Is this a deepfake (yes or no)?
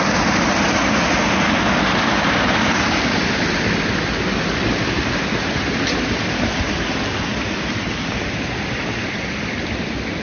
no